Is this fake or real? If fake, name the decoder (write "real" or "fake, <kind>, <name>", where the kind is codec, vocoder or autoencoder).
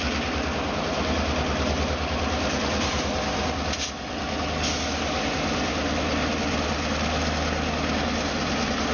real